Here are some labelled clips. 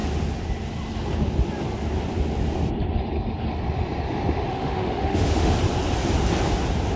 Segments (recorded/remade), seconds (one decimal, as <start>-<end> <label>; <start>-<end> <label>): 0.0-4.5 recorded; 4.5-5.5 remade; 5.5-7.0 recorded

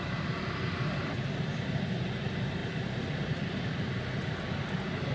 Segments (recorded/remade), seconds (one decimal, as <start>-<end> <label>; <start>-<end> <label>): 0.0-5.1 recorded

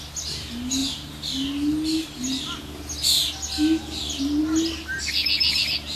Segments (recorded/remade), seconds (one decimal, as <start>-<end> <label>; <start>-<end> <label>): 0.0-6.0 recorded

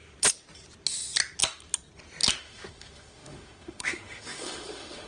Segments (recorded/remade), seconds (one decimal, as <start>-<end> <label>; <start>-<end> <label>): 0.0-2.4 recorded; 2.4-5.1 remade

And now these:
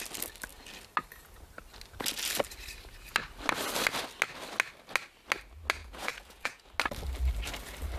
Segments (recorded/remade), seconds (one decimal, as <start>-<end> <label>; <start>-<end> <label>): 0.0-5.8 recorded; 5.8-6.6 remade; 6.6-8.0 recorded